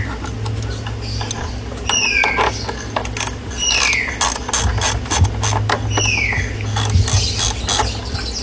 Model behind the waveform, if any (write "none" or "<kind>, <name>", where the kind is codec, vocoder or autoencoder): none